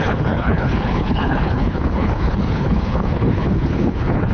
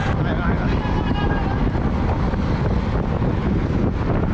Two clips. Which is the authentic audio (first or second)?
second